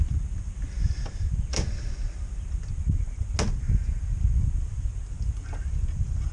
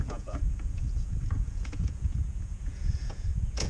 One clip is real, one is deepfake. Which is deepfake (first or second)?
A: second